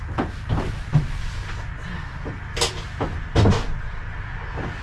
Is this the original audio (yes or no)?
yes